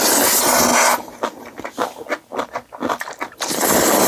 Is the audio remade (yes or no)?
no